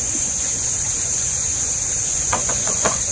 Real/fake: fake